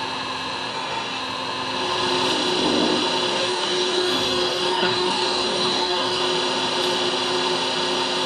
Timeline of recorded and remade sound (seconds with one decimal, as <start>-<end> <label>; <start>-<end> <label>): 0.0-0.7 recorded; 0.7-1.2 remade; 1.2-3.3 recorded; 3.3-6.2 remade; 6.2-8.3 recorded